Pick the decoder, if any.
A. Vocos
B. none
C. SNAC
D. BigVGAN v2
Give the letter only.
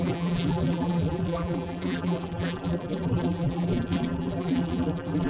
D